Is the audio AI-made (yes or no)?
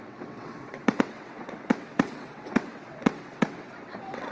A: yes